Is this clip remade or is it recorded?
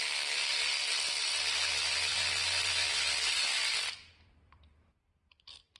remade